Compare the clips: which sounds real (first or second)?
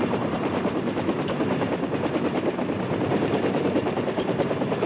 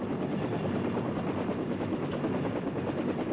second